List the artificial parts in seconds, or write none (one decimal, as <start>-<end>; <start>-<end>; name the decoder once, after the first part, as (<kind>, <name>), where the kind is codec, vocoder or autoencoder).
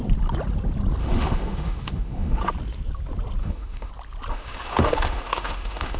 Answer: 1.0-2.4 (autoencoder, DAC-VAE); 3.4-3.9; 4.3-6.0